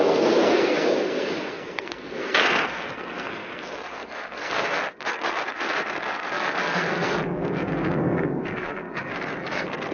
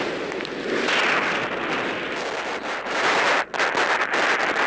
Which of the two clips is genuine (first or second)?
second